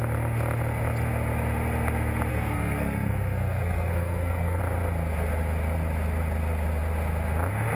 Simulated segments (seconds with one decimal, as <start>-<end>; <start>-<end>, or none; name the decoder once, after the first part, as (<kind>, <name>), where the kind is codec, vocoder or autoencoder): 2.3-4.6 (codec, SNAC)